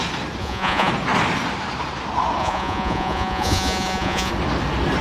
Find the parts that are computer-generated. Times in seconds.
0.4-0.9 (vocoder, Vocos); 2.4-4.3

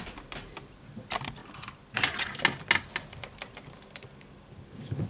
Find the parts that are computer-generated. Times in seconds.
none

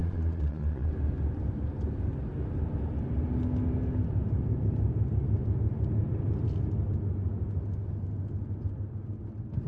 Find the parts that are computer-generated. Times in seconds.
0.0-0.9 (vocoder, Vocos)

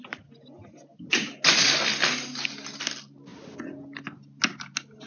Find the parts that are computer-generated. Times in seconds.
none

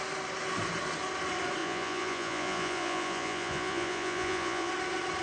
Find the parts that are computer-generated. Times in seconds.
1.6-4.7 (vocoder, Vocos)

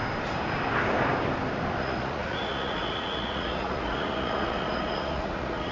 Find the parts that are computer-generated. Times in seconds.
1.8-5.7 (vocoder, Vocos)